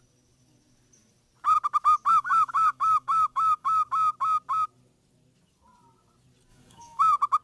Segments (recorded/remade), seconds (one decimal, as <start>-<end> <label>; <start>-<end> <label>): 0.0-2.1 recorded; 2.1-3.9 remade; 3.9-6.5 recorded; 6.5-7.0 remade; 7.0-7.4 recorded

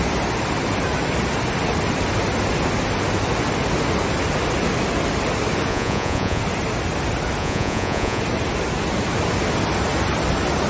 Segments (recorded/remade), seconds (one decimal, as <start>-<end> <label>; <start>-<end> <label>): 0.0-5.7 recorded; 5.7-6.4 remade; 6.4-7.4 recorded; 7.4-8.2 remade; 8.2-10.7 recorded

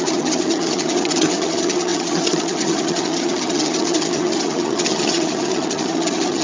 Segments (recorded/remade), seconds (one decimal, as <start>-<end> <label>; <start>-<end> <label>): 0.0-6.4 remade